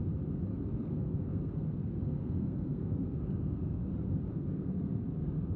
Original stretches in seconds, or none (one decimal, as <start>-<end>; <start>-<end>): 0.0-0.5; 3.9-4.3